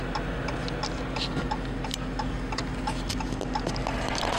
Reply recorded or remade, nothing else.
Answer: recorded